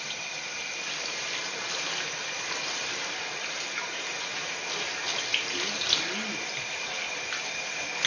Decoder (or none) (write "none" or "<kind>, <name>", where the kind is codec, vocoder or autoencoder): none